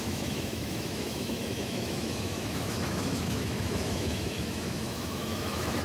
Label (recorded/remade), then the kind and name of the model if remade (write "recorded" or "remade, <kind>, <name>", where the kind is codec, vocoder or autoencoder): remade, autoencoder, DAC-VAE